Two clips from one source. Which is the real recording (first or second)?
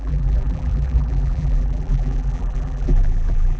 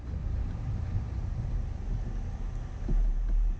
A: second